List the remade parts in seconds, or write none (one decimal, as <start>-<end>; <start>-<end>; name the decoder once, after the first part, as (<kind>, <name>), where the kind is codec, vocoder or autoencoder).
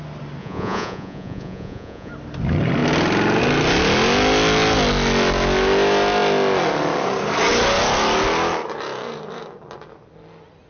0.4-2.1 (vocoder, Vocos)